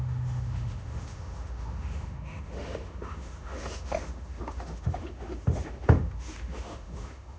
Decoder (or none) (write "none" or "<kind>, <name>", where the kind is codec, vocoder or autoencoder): autoencoder, DAC-VAE